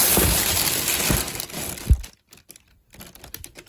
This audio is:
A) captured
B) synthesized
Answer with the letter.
A